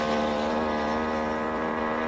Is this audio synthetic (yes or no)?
yes